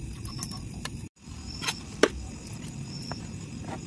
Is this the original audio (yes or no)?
no